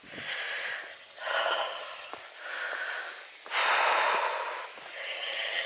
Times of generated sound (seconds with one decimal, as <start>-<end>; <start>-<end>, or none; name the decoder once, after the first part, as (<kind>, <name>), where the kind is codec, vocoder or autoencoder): 0.9-2.1 (vocoder, HiFi-GAN); 4.9-5.7